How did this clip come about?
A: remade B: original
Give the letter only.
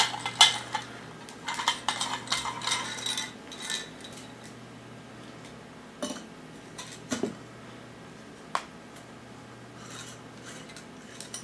B